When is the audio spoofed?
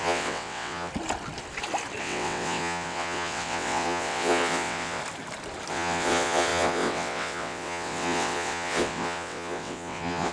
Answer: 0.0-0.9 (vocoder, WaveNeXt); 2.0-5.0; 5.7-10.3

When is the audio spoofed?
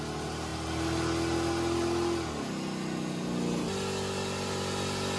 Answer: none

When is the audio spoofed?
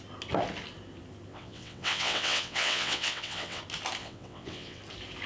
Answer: 1.3-3.6 (vocoder, WaveNeXt); 4.0-4.8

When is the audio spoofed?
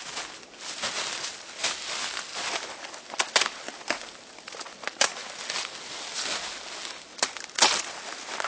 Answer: none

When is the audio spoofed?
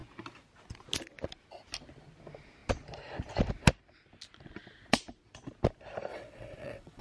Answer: 6.1-7.0 (vocoder, WaveNeXt)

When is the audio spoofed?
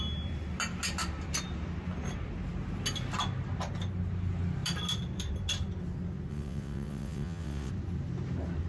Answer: 6.3-7.7 (vocoder, WaveNeXt)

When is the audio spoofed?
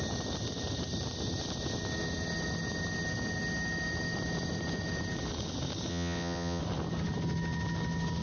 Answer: 5.9-6.6 (vocoder, WaveNeXt)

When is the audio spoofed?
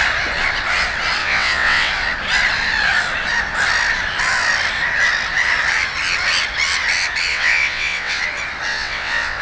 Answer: 1.2-1.9 (vocoder, WaveNeXt); 7.3-8.2; 8.7-9.4